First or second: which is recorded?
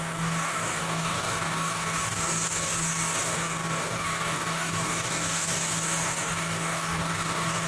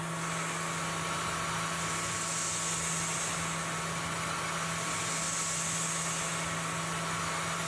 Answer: second